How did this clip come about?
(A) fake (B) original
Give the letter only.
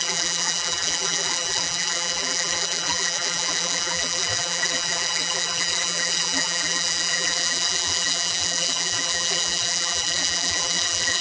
A